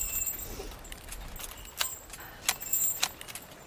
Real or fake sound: real